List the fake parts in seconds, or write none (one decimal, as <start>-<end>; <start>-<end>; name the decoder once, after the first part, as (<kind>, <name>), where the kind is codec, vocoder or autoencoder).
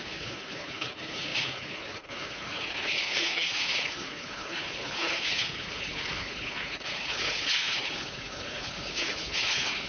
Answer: 0.0-9.9 (codec, HILCodec)